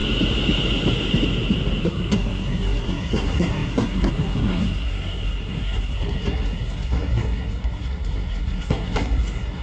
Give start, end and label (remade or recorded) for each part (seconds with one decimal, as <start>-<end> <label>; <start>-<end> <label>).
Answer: 0.0-1.8 recorded; 1.8-9.6 remade